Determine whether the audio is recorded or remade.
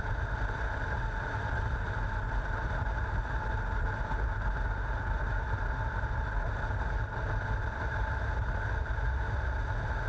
recorded